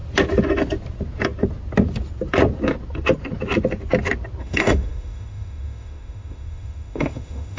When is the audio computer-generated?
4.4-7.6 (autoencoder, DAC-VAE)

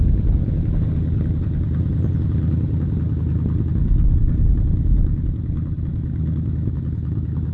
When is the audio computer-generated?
5.9-6.8 (autoencoder, DAC-VAE)

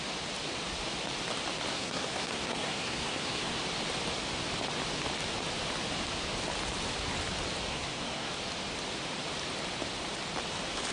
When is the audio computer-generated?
1.7-3.6 (codec, SNAC); 7.7-8.3

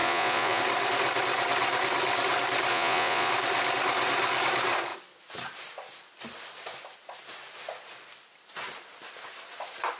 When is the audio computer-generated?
0.0-0.6 (vocoder, Vocos); 2.7-3.3